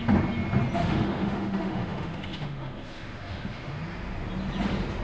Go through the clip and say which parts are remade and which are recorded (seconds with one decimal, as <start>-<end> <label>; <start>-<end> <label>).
0.0-0.8 recorded; 0.8-3.8 remade; 3.8-5.0 recorded